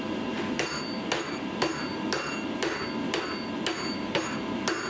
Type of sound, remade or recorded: recorded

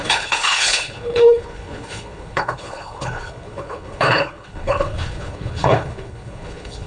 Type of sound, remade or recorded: remade